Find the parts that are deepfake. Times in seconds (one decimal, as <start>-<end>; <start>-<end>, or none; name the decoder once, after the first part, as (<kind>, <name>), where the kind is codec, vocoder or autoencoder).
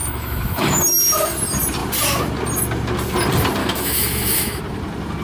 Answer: 0.0-0.8 (autoencoder, DAC-VAE); 3.6-4.6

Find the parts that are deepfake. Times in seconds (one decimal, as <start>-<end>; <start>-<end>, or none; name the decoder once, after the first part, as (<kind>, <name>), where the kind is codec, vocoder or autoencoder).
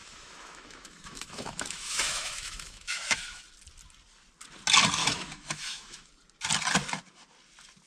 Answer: 0.0-3.4 (autoencoder, DAC-VAE); 5.0-6.1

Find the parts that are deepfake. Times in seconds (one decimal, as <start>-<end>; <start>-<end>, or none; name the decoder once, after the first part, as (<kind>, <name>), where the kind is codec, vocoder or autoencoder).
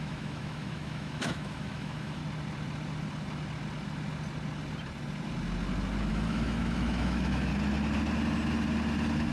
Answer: 0.0-2.2 (autoencoder, DAC-VAE); 6.1-7.5